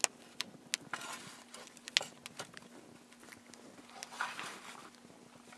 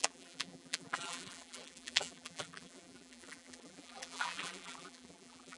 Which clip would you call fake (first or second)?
second